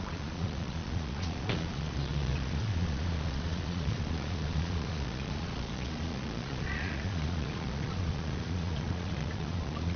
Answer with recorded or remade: remade